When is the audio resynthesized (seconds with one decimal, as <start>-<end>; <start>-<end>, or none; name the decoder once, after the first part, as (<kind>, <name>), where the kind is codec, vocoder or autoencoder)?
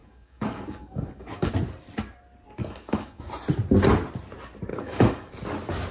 0.0-1.5 (codec, DAC); 2.6-3.3; 4.7-5.3